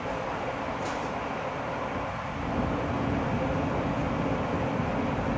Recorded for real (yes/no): yes